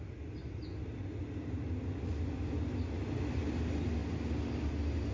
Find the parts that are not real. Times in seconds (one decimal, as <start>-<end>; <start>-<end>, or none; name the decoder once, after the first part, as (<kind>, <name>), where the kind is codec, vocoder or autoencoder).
none